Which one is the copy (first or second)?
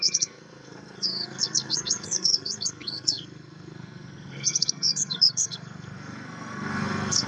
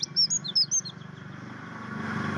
first